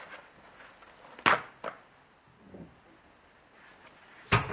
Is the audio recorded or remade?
recorded